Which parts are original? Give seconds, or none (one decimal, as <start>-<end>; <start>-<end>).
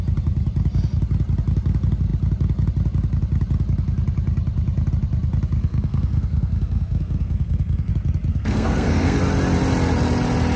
0.0-5.6; 7.9-8.3; 9.2-10.6